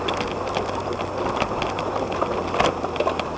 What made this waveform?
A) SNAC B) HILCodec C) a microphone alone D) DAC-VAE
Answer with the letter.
C